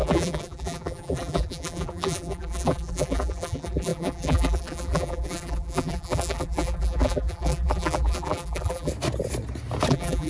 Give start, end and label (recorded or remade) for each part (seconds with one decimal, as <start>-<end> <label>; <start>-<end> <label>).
0.0-8.9 remade; 8.9-9.9 recorded; 9.9-10.3 remade